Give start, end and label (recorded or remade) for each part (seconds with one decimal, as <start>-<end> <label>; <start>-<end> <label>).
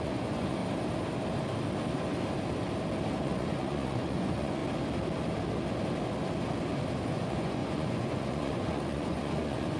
0.0-0.6 remade; 0.6-3.1 recorded; 3.1-4.6 remade; 4.6-7.0 recorded; 7.0-9.8 remade